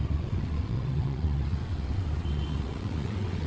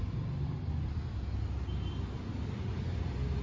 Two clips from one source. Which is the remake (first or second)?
first